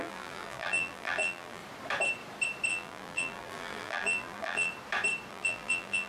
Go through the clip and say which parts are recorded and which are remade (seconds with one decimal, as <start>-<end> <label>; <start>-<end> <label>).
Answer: 0.0-1.6 remade; 1.6-2.7 recorded; 2.7-4.7 remade; 4.7-5.3 recorded; 5.3-6.1 remade